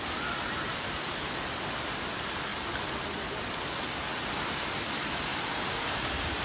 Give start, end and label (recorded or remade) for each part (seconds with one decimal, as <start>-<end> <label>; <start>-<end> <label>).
0.0-6.4 recorded